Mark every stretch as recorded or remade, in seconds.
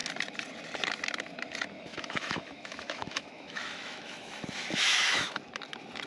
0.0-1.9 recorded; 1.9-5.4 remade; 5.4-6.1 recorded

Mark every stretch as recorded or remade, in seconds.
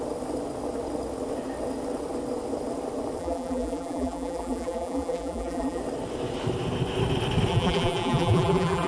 0.0-3.2 recorded; 3.2-5.8 remade; 5.8-7.5 recorded; 7.5-8.9 remade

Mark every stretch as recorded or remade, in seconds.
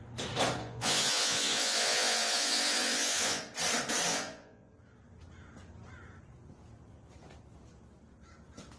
0.0-0.6 recorded; 0.6-3.4 remade; 3.4-4.1 recorded; 4.1-4.7 remade; 4.7-8.8 recorded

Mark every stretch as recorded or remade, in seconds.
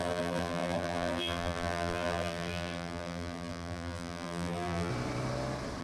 0.0-4.9 remade; 4.9-5.8 recorded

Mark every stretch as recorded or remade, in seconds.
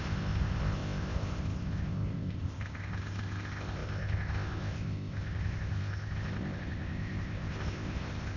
0.0-8.4 remade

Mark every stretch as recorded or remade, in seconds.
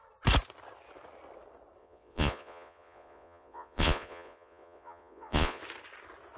0.0-1.8 recorded; 1.8-5.6 remade; 5.6-6.4 recorded